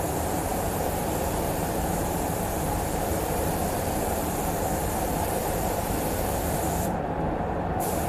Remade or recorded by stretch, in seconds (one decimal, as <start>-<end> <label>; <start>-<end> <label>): 0.0-8.1 remade

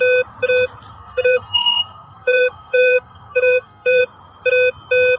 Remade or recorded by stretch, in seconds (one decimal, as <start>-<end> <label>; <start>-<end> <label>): 0.0-0.9 recorded; 0.9-4.0 remade; 4.0-5.2 recorded

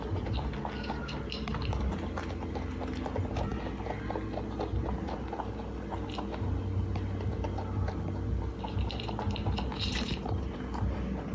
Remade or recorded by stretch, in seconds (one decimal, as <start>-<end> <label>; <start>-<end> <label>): 0.0-11.3 recorded

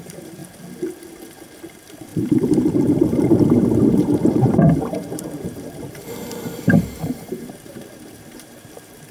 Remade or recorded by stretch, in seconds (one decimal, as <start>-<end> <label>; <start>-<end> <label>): 0.0-0.4 remade; 0.4-1.7 recorded; 1.7-9.1 remade

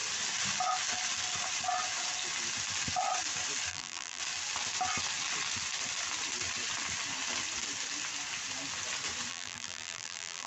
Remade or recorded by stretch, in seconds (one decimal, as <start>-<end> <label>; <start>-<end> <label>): 0.0-3.7 recorded; 3.7-4.2 remade; 4.2-9.3 recorded; 9.3-10.5 remade